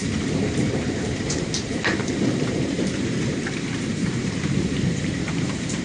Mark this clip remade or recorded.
remade